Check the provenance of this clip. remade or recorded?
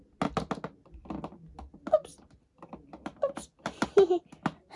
recorded